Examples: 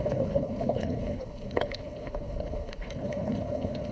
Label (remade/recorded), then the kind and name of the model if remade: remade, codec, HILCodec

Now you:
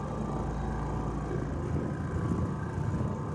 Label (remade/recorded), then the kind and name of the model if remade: recorded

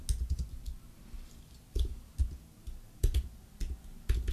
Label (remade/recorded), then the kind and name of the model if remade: recorded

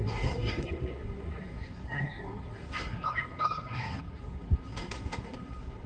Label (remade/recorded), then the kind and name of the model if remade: remade, codec, SNAC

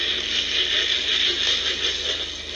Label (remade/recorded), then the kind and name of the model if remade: recorded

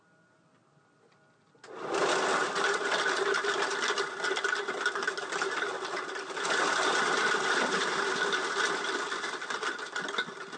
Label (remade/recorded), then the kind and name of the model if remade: recorded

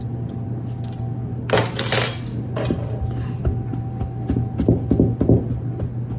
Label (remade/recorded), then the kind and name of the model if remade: recorded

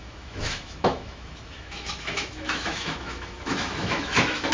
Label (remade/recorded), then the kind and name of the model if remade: remade, autoencoder, DAC-VAE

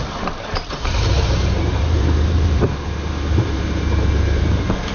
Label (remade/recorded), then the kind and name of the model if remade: remade, vocoder, BigVGAN v2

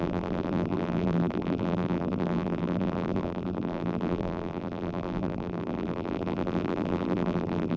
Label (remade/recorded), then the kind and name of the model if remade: remade, vocoder, BigVGAN v2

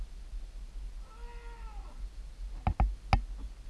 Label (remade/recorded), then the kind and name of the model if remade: recorded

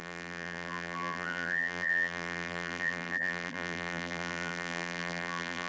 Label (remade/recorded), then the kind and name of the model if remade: remade, vocoder, BigVGAN v2